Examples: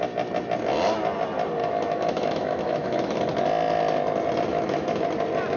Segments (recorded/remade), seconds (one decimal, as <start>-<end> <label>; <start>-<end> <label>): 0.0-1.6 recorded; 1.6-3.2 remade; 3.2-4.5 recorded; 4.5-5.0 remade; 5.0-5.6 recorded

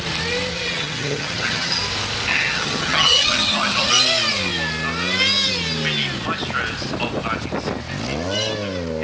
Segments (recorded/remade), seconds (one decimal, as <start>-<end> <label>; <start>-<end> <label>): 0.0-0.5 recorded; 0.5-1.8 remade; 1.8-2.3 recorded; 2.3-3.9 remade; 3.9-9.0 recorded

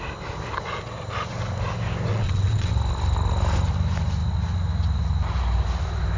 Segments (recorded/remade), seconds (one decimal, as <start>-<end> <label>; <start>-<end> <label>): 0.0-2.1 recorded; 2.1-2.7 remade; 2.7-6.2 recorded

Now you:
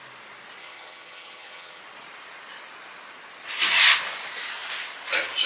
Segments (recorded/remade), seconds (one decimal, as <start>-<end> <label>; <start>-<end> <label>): 0.0-0.6 recorded; 0.6-1.8 remade; 1.8-5.5 recorded

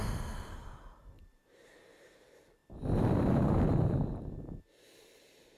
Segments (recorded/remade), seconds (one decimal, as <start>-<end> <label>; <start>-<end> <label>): 0.0-2.6 remade; 2.6-5.6 recorded

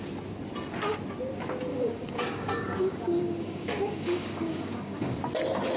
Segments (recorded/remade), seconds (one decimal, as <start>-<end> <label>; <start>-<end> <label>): 0.0-1.7 recorded; 1.7-5.2 remade; 5.2-5.8 recorded

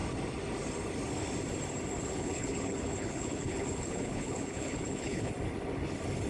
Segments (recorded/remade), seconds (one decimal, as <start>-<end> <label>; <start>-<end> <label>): 0.0-2.1 recorded; 2.1-5.3 remade; 5.3-6.3 recorded

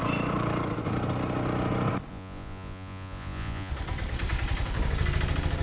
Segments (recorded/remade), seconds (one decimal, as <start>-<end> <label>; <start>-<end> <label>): 0.0-2.1 recorded; 2.1-3.7 remade; 3.7-5.6 recorded